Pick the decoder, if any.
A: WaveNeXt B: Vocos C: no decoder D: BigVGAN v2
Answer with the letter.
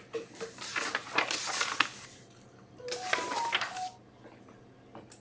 C